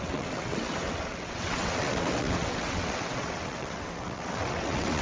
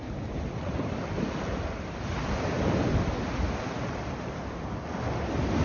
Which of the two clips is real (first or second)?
second